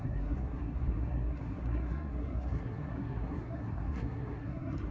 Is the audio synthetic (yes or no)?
yes